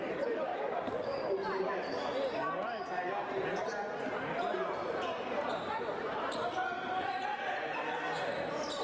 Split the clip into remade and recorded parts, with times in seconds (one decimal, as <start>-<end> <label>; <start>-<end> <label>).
0.0-8.8 remade

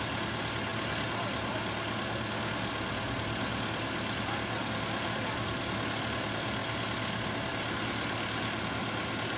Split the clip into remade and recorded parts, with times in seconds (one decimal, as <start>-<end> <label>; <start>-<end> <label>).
0.0-9.4 recorded

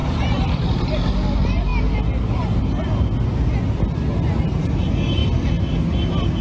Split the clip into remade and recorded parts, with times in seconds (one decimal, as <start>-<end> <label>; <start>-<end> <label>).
0.0-0.9 remade; 0.9-6.4 recorded